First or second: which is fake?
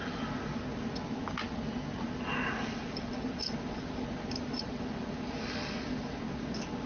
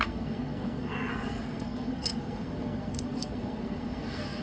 second